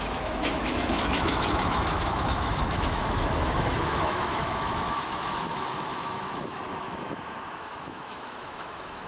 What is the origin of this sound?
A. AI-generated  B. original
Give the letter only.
A